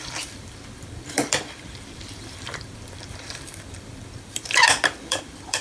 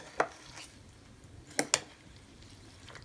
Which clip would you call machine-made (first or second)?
first